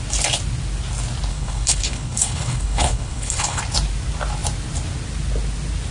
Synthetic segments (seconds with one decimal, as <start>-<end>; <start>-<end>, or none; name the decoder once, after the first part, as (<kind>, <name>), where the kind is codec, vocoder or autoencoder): 1.3-3.6 (codec, HILCodec)